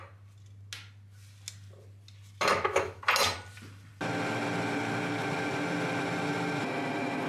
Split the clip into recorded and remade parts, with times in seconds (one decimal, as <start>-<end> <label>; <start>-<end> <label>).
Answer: 0.0-2.5 recorded; 2.5-3.0 remade; 3.0-7.3 recorded